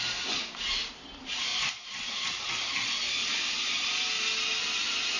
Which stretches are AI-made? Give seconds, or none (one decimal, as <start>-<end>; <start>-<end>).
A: none